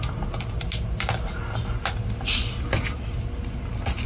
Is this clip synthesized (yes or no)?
no